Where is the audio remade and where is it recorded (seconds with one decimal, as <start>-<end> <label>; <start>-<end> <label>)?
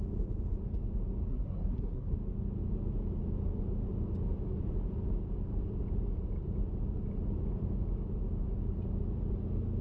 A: 0.0-1.3 recorded; 1.3-2.1 remade; 2.1-9.8 recorded